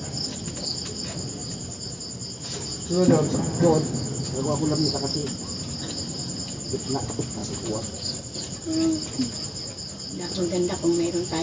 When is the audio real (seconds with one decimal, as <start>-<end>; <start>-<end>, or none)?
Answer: 0.0-1.4; 2.0-5.2; 5.8-7.4; 8.4-11.4